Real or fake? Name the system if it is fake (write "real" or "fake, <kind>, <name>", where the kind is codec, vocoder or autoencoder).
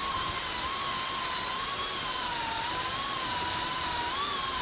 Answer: real